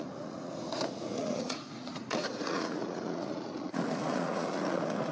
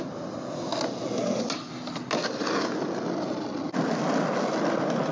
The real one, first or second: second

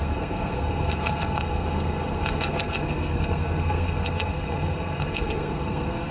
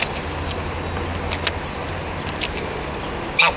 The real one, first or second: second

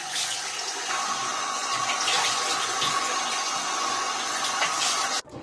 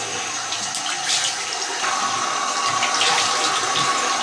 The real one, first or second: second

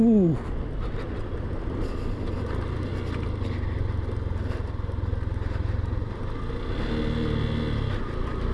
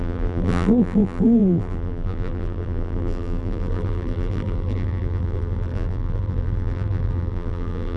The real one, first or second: first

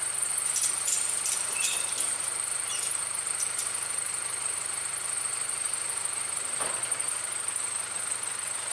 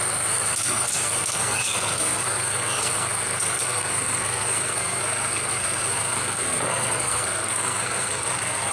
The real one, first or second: first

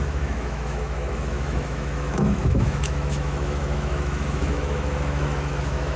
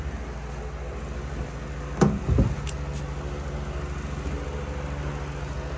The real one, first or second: second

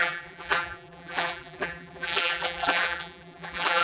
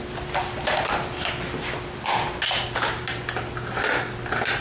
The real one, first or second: second